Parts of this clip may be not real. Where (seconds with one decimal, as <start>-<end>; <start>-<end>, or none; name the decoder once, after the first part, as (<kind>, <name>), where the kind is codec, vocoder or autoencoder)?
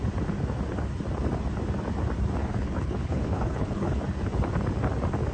2.4-4.0 (codec, HILCodec)